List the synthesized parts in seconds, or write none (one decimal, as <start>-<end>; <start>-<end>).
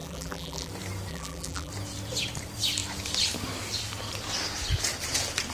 0.0-0.7; 1.1-1.7